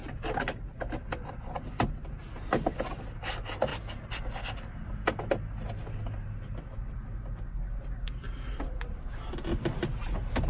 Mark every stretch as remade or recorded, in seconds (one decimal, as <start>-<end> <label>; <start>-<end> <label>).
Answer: 0.0-10.5 recorded